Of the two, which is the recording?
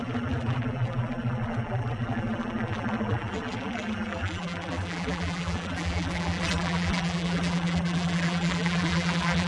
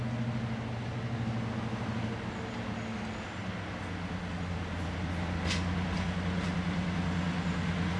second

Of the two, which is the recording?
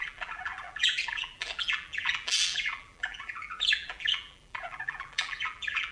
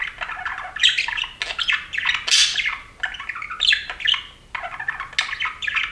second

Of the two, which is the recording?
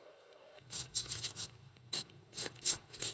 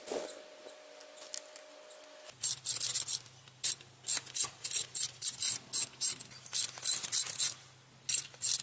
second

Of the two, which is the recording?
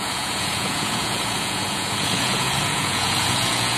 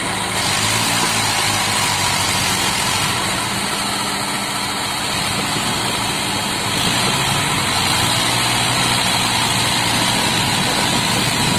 second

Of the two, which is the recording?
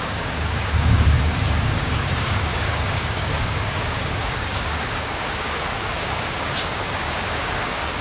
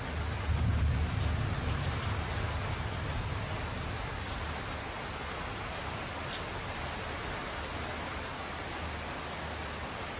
second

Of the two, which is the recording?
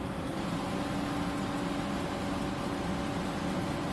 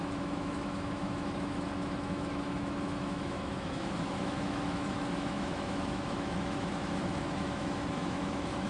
first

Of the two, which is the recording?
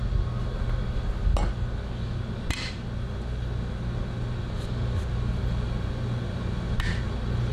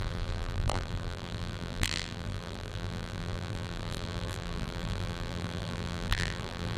first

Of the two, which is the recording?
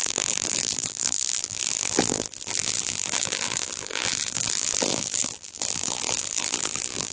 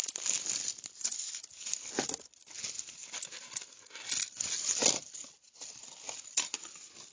second